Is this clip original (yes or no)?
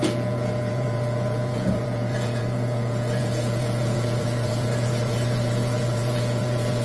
no